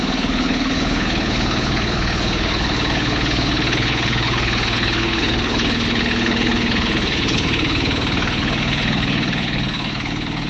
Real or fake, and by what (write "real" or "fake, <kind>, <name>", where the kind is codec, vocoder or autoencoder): fake, codec, HILCodec